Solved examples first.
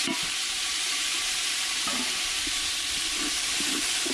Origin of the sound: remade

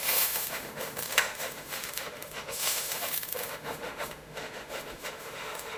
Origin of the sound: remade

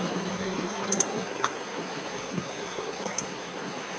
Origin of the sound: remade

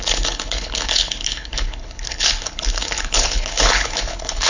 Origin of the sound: remade